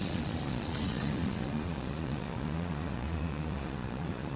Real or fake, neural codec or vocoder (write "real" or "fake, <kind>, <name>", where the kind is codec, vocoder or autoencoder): fake, vocoder, Vocos